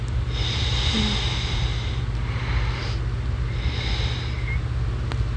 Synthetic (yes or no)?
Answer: no